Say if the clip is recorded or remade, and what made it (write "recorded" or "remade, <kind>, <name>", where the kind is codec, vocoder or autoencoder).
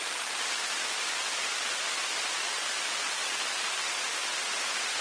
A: remade, vocoder, BigVGAN v2